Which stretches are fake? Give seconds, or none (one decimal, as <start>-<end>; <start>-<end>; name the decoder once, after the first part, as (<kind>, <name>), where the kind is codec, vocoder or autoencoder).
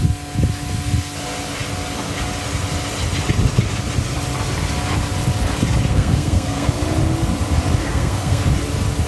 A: 5.9-6.7 (codec, SNAC); 7.8-8.4